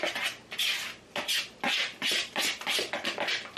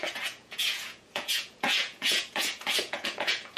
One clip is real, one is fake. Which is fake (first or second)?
second